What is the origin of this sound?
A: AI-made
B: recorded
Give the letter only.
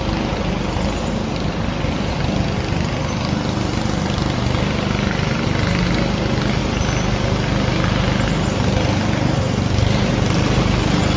B